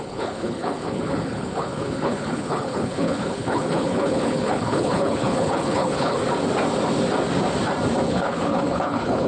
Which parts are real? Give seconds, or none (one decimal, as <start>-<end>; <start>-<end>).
6.2-8.1